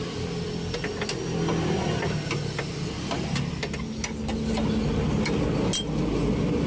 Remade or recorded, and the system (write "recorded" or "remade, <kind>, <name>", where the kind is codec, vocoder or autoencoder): recorded